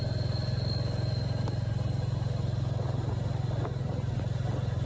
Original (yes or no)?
yes